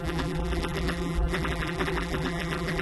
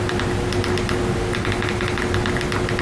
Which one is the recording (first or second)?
second